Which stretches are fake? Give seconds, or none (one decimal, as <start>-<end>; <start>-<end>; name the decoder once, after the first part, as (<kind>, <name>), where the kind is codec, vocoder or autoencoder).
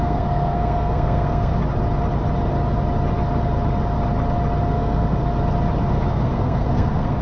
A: 0.0-1.5 (codec, SNAC); 4.7-5.2; 6.1-7.2